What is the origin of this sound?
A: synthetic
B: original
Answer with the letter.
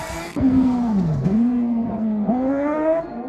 A